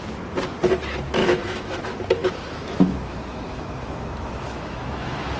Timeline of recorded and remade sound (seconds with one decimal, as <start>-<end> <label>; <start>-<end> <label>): 0.0-1.2 recorded; 1.2-1.8 remade; 1.8-2.2 recorded; 2.2-5.4 remade